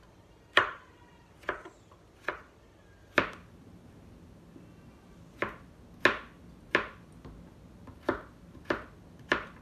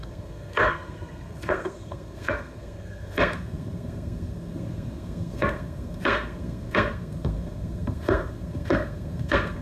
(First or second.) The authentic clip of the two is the first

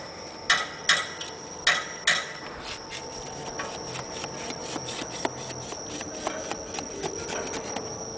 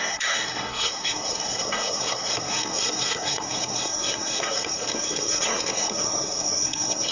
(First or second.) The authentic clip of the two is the first